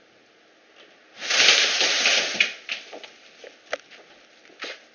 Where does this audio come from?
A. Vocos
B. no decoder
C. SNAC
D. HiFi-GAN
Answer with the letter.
B